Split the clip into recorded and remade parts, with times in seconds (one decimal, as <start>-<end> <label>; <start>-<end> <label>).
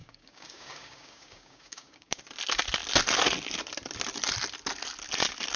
0.0-2.2 remade; 2.2-5.6 recorded